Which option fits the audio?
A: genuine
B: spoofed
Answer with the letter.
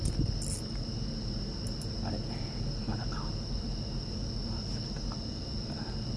A